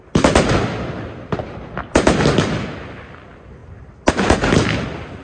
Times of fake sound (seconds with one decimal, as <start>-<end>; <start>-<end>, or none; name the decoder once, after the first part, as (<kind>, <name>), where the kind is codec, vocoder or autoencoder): none